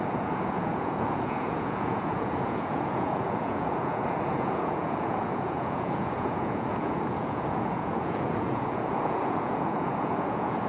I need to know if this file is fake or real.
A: fake